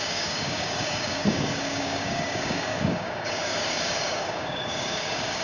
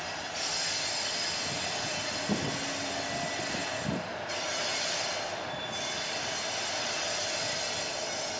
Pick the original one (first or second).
second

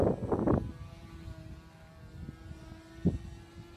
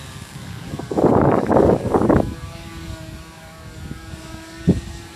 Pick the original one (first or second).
first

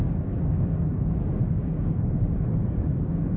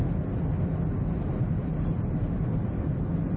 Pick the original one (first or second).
second